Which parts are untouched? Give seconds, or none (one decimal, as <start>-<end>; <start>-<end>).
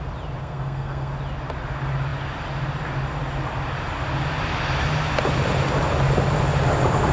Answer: 0.0-0.4; 1.1-7.1